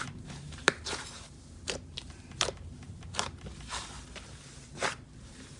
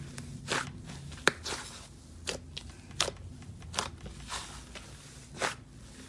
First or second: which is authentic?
second